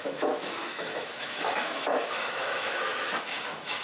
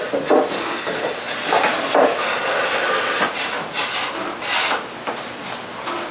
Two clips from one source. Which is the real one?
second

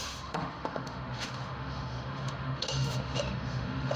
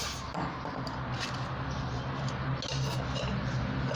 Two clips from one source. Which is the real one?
second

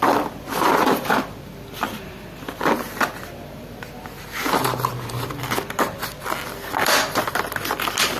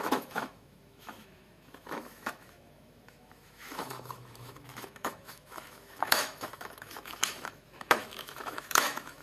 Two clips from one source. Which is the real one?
first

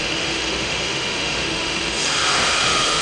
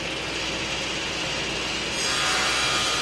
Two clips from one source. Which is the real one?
second